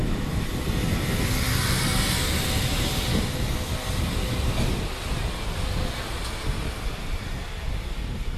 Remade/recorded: recorded